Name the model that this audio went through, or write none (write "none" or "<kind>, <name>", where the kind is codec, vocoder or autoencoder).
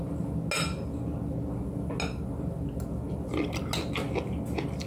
none